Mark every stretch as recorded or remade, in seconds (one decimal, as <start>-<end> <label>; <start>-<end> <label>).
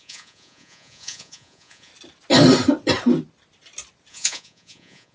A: 0.0-1.9 remade; 1.9-4.1 recorded; 4.1-5.1 remade